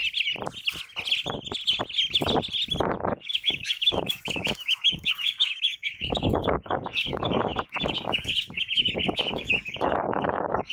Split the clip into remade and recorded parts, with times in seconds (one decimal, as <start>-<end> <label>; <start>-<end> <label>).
0.0-3.0 recorded; 3.0-10.7 remade